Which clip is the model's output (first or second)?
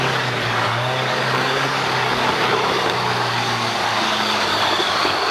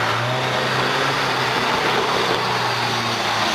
first